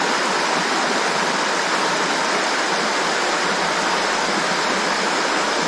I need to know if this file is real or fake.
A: real